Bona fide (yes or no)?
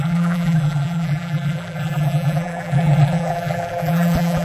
no